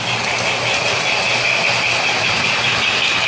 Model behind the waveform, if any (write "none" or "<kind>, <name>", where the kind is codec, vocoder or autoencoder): none